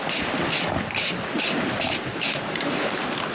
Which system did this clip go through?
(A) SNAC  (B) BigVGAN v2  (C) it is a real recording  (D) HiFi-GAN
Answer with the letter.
C